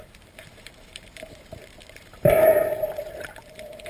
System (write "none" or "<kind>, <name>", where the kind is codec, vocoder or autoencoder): vocoder, BigVGAN v2